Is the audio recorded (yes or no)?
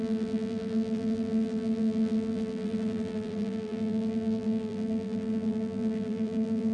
no